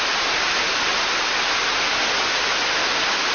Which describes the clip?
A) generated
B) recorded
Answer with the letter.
B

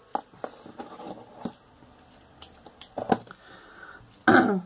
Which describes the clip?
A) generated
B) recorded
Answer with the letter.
B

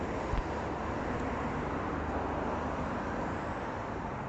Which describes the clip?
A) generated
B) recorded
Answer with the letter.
B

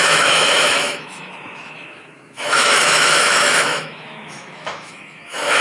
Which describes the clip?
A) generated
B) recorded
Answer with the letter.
A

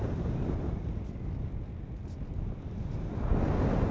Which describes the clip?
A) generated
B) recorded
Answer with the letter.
B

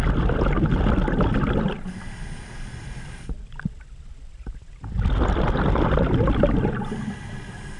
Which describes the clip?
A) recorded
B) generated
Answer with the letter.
A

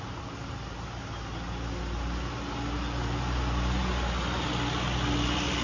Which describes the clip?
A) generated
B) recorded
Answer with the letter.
B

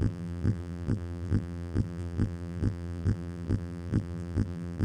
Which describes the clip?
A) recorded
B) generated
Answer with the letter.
B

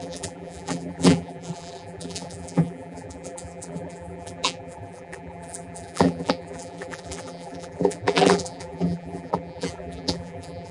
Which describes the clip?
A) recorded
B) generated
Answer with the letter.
B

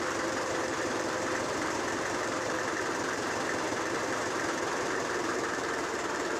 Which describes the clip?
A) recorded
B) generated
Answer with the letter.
B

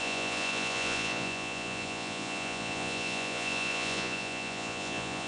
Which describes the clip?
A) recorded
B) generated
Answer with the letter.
B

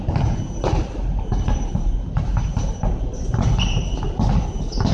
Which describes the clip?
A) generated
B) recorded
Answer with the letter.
B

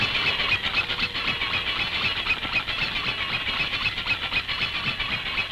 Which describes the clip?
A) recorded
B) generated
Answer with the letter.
A